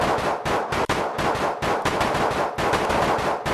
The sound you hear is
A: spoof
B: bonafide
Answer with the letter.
B